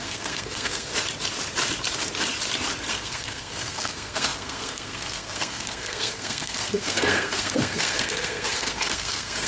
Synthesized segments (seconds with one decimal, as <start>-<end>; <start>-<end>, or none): 0.0-0.9; 2.9-9.5